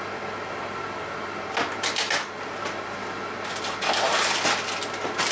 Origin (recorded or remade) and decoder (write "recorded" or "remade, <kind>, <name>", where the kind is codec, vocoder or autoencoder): recorded